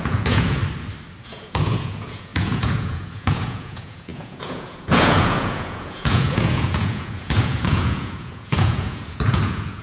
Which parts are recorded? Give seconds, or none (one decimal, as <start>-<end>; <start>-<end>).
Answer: 0.6-1.2